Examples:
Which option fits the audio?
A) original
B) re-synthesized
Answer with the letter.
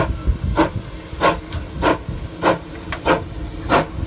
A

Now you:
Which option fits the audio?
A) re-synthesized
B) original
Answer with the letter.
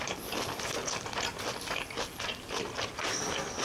B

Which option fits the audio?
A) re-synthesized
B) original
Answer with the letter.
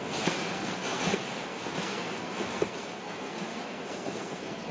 A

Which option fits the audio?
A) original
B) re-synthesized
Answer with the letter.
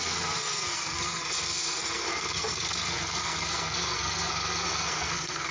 B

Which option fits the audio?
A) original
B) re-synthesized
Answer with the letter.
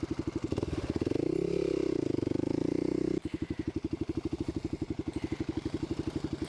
A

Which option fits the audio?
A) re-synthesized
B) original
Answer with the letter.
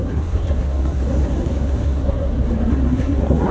A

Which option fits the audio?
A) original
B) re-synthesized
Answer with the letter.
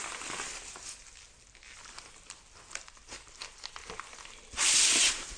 A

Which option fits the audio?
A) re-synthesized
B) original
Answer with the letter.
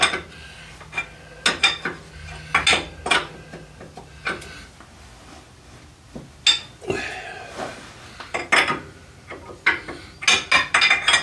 B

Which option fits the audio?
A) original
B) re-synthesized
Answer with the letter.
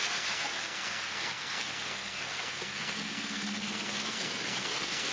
B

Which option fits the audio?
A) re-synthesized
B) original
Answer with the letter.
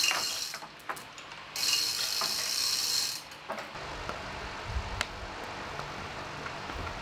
B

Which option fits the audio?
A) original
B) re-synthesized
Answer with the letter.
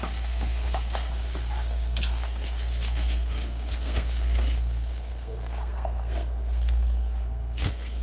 B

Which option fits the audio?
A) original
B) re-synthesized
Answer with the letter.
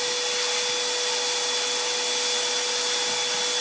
A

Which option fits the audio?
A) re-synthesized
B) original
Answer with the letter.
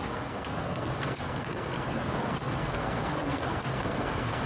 A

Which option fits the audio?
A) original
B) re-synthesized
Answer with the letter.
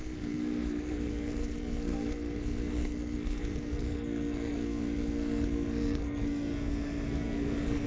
B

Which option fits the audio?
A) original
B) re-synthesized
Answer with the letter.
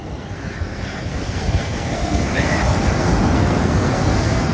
B